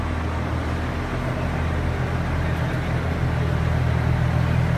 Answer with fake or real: real